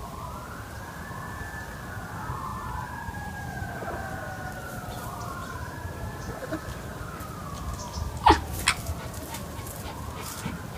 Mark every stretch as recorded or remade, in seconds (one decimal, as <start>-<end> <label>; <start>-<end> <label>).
0.0-2.5 recorded; 2.5-3.4 remade; 3.4-5.4 recorded; 5.4-6.0 remade; 6.0-10.8 recorded